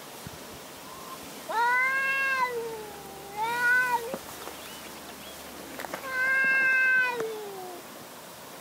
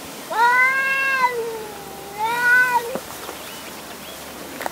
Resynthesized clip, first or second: second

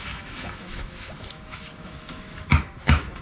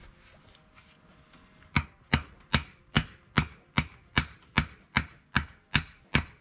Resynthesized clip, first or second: first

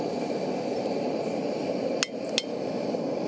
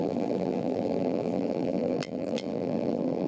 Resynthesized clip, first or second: second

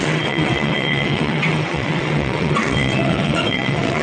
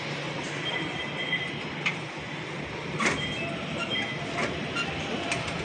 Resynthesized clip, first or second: first